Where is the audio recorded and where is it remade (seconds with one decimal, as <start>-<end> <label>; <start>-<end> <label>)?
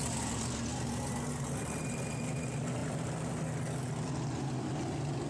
0.0-5.3 recorded